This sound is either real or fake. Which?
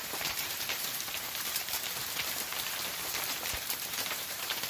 fake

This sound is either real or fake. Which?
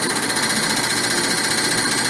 real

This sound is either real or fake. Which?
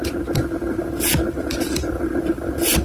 fake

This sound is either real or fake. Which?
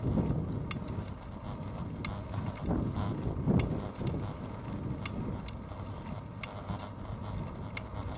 real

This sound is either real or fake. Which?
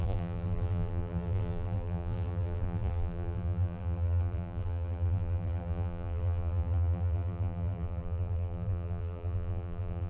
fake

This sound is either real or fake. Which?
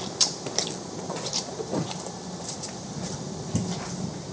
fake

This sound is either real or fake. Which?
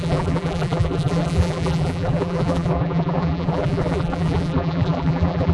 fake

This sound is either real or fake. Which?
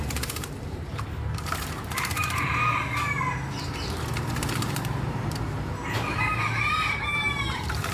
fake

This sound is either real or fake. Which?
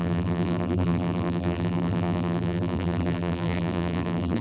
fake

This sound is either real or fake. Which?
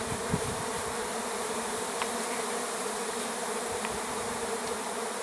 fake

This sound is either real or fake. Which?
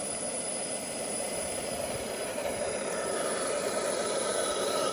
fake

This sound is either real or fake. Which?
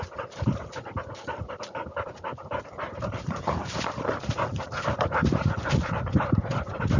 fake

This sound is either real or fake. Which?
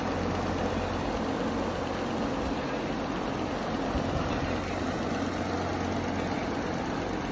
real